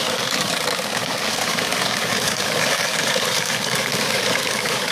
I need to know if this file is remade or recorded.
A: remade